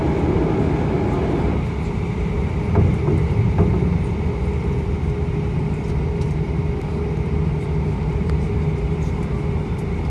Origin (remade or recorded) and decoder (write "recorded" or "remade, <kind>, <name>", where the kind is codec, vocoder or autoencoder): recorded